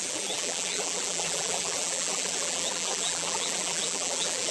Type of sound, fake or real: fake